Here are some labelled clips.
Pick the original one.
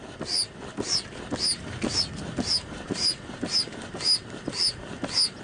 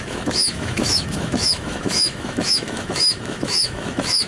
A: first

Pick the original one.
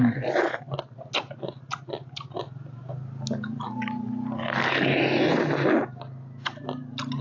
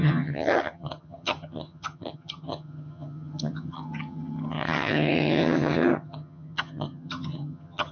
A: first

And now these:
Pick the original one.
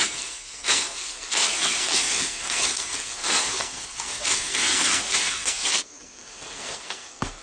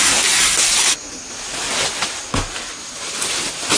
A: second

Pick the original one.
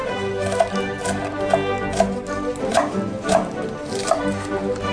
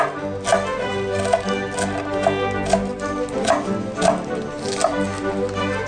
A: second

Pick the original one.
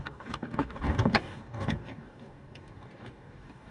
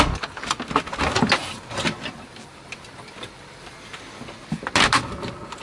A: second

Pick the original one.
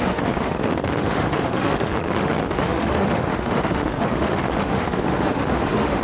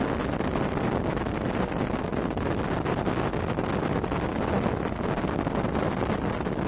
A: second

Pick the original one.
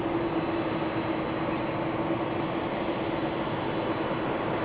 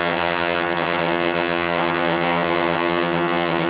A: first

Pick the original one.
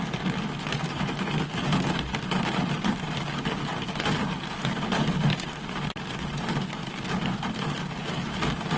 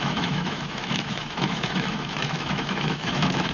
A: first